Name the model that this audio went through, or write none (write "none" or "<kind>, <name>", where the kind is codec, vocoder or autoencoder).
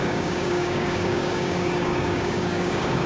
codec, DAC